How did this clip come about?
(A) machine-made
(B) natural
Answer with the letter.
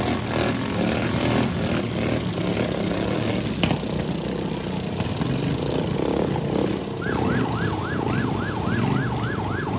B